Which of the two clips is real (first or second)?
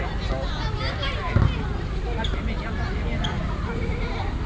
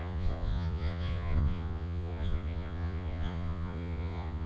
first